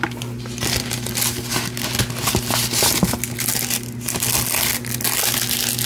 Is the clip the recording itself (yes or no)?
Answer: yes